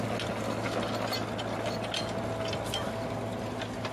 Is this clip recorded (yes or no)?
yes